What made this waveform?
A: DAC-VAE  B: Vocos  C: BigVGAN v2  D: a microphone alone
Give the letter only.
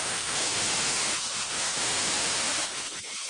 A